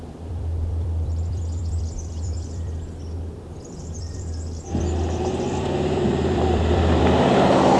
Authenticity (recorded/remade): remade